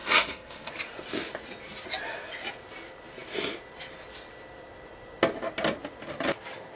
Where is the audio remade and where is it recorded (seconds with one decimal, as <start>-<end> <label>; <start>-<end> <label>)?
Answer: 0.0-0.7 remade; 0.7-6.8 recorded